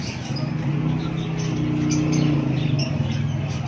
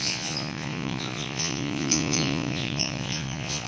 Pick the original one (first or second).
first